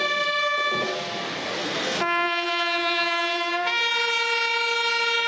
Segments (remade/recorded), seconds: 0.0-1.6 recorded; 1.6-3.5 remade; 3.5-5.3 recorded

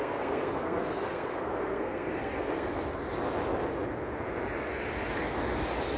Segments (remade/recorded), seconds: 0.0-2.7 remade; 2.7-6.0 recorded